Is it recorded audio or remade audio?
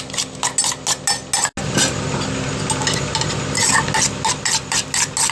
recorded